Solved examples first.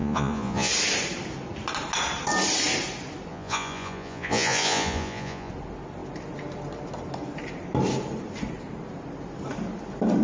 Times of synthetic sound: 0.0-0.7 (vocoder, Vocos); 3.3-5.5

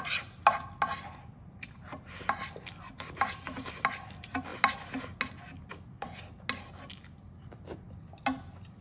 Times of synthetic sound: none

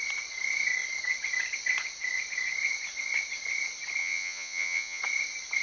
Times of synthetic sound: 4.0-5.0 (vocoder, Vocos)

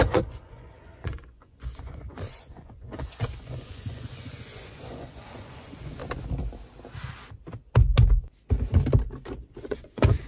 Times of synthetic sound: 0.0-6.0 (vocoder, Vocos); 9.6-10.3

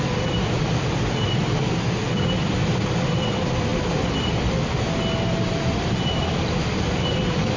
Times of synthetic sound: none

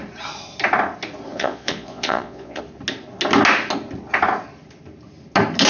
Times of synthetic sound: 1.3-2.6 (vocoder, Vocos)

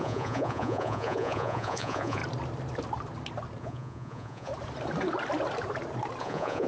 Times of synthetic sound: 0.0-2.2 (vocoder, Vocos); 3.6-4.5; 6.2-6.7

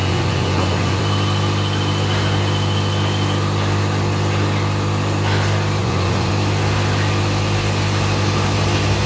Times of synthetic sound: 0.0-1.0 (vocoder, Vocos); 5.8-6.3